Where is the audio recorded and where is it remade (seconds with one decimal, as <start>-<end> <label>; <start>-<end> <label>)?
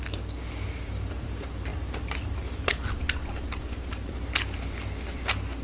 0.0-5.6 remade